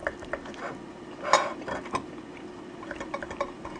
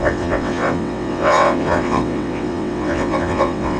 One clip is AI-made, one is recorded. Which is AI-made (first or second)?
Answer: second